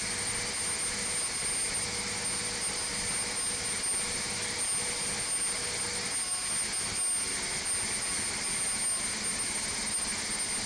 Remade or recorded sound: recorded